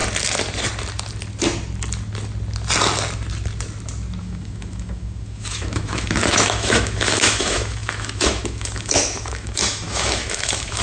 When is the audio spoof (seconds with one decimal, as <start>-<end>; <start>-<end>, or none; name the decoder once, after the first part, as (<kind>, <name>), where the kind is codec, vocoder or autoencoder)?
4.2-10.8 (autoencoder, DAC-VAE)

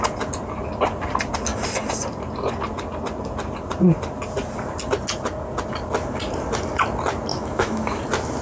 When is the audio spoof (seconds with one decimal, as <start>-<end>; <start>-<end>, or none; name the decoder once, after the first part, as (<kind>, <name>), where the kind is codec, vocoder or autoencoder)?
7.3-8.0 (autoencoder, DAC-VAE)

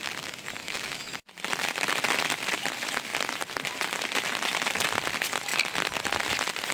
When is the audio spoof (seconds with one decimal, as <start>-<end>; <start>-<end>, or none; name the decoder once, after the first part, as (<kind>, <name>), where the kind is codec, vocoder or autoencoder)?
0.6-1.1 (autoencoder, DAC-VAE)

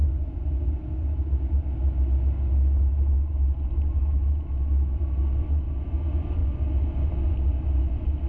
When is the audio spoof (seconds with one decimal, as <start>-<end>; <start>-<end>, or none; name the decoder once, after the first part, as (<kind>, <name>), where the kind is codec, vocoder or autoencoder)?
4.0-5.0 (autoencoder, DAC-VAE)

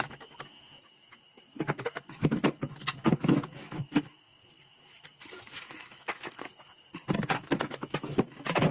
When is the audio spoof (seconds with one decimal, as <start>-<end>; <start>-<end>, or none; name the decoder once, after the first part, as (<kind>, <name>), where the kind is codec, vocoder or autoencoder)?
0.0-6.5 (autoencoder, DAC-VAE); 7.4-8.7

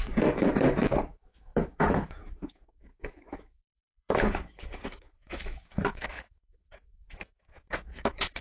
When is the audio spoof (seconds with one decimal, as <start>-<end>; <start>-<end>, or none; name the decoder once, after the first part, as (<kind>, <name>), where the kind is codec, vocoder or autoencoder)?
0.0-8.4 (autoencoder, DAC-VAE)

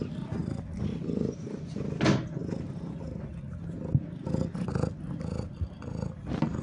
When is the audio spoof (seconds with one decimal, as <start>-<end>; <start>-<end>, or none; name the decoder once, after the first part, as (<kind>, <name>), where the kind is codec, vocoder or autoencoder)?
none

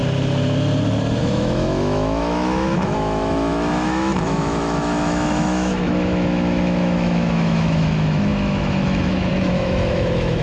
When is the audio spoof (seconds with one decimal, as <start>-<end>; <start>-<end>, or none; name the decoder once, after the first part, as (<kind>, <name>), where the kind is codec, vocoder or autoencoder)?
1.2-10.4 (autoencoder, DAC-VAE)